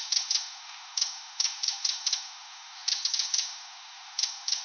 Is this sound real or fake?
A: fake